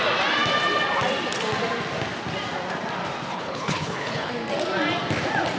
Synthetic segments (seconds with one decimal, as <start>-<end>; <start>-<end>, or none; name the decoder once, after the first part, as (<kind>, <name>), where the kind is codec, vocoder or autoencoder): 3.3-4.3 (codec, HILCodec)

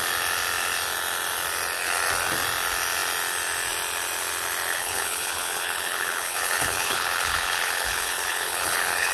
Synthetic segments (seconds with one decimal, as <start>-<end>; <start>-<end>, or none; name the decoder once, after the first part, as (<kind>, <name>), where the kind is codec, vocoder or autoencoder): 4.7-9.1 (codec, HILCodec)

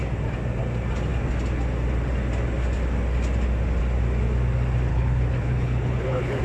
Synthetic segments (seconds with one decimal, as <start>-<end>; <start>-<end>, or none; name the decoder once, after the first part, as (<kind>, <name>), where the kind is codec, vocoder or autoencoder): 4.9-6.4 (codec, HILCodec)

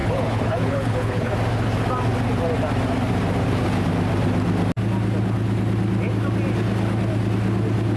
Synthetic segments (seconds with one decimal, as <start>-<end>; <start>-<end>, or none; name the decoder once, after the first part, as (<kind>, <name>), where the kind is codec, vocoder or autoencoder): 0.0-1.3 (codec, HILCodec)

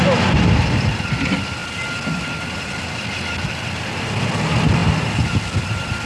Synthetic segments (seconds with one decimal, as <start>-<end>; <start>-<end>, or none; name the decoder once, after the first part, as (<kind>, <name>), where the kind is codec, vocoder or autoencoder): none

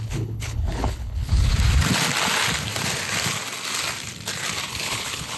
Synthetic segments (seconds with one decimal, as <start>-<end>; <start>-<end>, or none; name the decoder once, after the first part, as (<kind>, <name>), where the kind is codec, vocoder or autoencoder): 0.0-1.5 (codec, HILCodec); 4.7-5.4